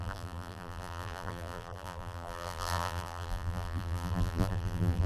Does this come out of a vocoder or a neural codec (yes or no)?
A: yes